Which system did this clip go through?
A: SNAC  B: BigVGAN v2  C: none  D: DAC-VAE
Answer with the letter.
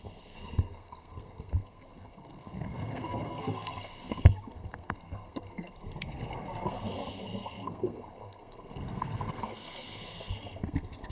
A